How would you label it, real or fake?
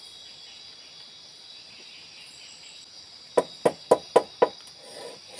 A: real